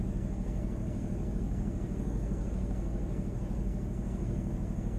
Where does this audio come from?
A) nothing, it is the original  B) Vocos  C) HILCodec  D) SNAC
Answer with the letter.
D